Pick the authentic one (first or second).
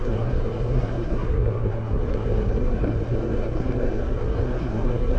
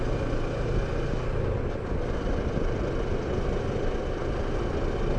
second